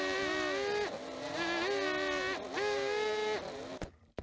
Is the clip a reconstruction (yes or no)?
no